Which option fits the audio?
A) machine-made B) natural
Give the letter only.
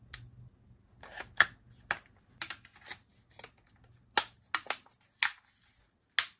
B